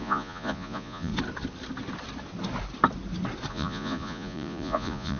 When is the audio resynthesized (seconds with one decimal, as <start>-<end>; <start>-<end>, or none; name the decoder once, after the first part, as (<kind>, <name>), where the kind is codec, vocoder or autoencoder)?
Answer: 0.0-1.1 (vocoder, Vocos); 3.5-5.2

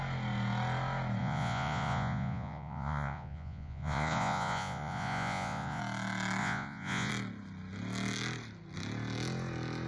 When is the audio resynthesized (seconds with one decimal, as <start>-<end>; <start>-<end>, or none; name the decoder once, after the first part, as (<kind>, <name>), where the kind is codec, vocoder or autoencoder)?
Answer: 1.2-5.8 (vocoder, Vocos); 6.4-7.1

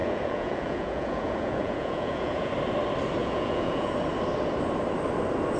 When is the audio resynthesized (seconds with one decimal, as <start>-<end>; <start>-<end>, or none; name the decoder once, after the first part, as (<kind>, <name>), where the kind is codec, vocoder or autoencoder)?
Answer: 0.0-2.5 (vocoder, Vocos); 3.2-3.9

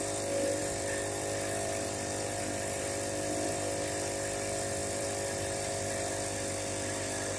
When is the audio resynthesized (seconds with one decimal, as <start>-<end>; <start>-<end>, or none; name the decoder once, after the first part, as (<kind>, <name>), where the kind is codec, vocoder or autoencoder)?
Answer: 0.6-3.5 (vocoder, BigVGAN v2); 4.8-6.1

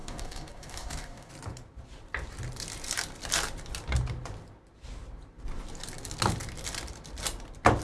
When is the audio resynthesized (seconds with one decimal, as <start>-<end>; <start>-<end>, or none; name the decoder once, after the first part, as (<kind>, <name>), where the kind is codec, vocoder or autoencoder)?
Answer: 0.0-1.3 (codec, DAC)

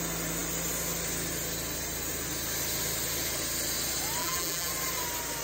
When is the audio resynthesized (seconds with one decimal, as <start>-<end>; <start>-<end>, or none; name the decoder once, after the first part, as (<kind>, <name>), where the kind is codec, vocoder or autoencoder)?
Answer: 4.2-4.7 (vocoder, BigVGAN v2)